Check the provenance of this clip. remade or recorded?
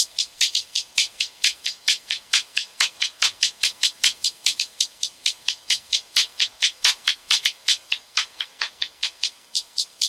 remade